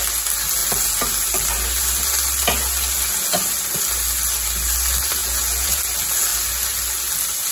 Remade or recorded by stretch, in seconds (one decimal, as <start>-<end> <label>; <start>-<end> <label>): 0.0-5.2 recorded; 5.2-5.8 remade; 5.8-7.5 recorded